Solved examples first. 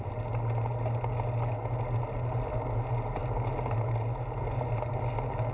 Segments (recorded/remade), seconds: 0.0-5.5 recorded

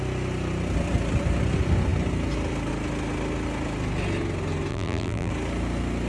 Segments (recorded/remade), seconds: 0.0-4.7 recorded; 4.7-5.3 remade; 5.3-6.1 recorded

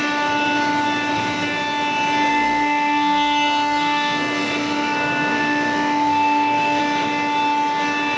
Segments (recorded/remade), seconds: 0.0-2.3 recorded; 2.3-6.8 remade; 6.8-8.2 recorded

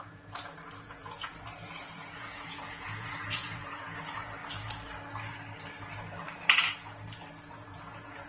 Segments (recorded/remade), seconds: 0.0-4.4 remade; 4.4-7.4 recorded; 7.4-8.3 remade

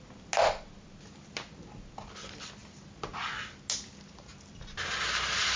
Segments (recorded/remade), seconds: 0.0-5.6 recorded

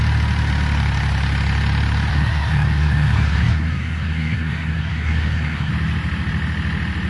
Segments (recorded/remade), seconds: 0.0-2.1 recorded; 2.1-5.7 remade; 5.7-7.1 recorded

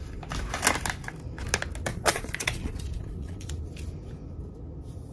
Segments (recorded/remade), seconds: 0.0-1.9 recorded; 1.9-3.5 remade; 3.5-5.1 recorded